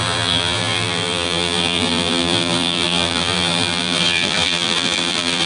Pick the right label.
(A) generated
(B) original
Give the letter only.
A